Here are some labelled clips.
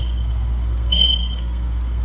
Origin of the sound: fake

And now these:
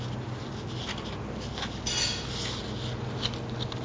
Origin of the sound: real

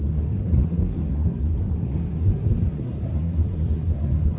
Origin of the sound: fake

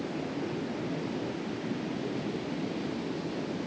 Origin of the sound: real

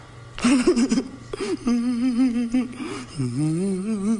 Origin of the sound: real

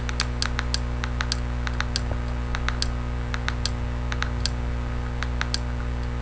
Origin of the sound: real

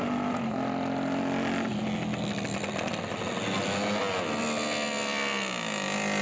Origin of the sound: real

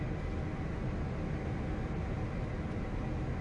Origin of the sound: real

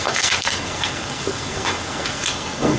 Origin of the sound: fake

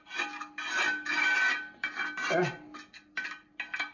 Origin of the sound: real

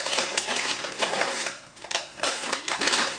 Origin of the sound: fake